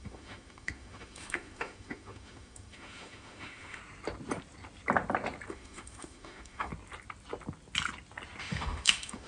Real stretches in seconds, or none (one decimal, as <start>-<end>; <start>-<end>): 3.8-5.5; 6.7-8.4